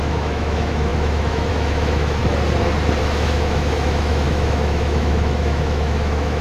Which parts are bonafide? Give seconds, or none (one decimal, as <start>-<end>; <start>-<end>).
2.2-3.0